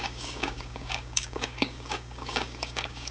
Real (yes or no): no